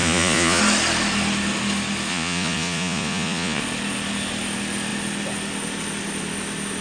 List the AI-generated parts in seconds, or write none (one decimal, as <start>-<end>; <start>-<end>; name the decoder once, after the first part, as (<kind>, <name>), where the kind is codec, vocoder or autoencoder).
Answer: 0.0-0.6 (vocoder, Vocos); 2.1-3.6